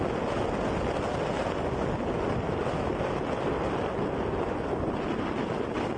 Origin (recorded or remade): recorded